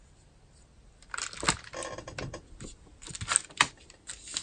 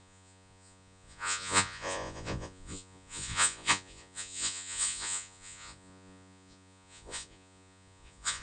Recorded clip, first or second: first